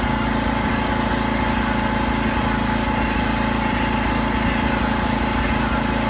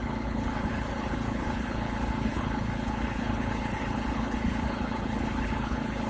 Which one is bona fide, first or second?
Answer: first